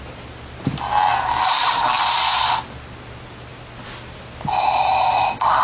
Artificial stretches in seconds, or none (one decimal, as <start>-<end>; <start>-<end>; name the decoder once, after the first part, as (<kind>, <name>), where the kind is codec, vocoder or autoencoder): none